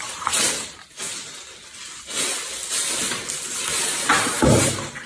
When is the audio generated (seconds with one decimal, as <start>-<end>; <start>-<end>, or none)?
0.0-1.0; 4.1-5.1